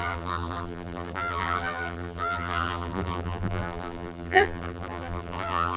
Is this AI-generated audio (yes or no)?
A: yes